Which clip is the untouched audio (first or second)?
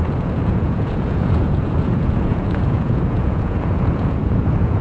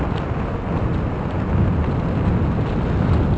second